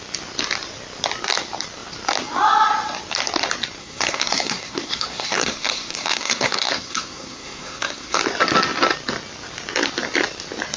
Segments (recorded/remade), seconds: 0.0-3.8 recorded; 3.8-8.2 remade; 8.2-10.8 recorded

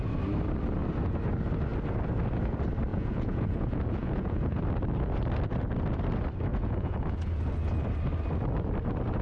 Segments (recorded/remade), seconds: 0.0-2.9 recorded; 2.9-4.6 remade; 4.6-6.5 recorded; 6.5-7.4 remade; 7.4-9.2 recorded

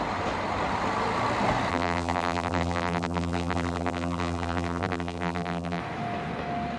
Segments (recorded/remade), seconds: 0.0-1.7 recorded; 1.7-5.8 remade; 5.8-6.8 recorded

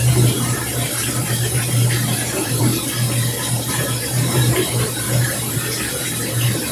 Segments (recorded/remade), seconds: 0.0-1.0 remade; 1.0-1.7 recorded; 1.7-2.7 remade; 2.7-3.7 recorded; 3.7-6.7 remade

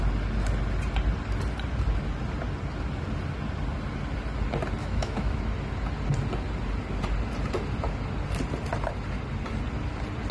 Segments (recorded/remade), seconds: 0.0-4.8 recorded; 4.8-5.4 remade; 5.4-10.3 recorded

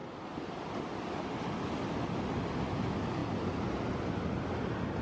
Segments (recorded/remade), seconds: 0.0-3.2 recorded; 3.2-4.1 remade; 4.1-5.0 recorded